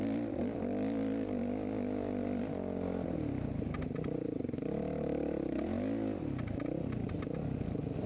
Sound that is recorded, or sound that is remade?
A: recorded